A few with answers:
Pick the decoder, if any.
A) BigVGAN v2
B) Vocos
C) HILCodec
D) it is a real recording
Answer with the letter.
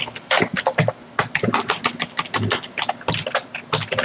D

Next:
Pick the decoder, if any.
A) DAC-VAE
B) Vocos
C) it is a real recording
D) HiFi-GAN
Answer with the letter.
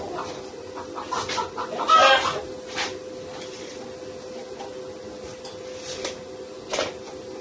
C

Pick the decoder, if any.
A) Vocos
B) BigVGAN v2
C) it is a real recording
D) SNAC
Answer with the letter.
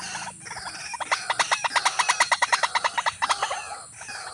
C